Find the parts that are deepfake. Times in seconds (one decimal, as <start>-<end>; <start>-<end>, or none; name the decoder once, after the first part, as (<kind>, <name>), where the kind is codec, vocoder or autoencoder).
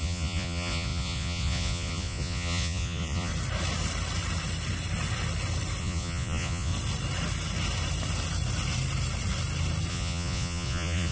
0.0-3.3 (vocoder, Vocos); 5.8-6.7; 9.9-11.1